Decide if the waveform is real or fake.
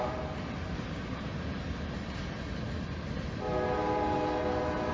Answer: real